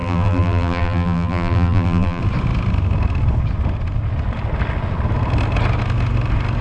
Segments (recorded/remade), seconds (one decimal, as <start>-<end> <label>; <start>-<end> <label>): 0.0-2.2 remade; 2.2-6.6 recorded